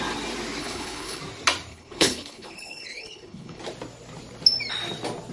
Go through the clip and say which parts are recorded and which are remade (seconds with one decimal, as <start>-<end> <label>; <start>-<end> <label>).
0.0-0.6 recorded; 0.6-1.2 remade; 1.2-1.7 recorded; 1.7-3.6 remade; 3.6-5.3 recorded